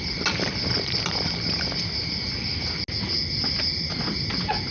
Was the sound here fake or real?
real